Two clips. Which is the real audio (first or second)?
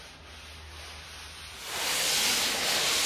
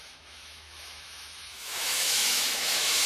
first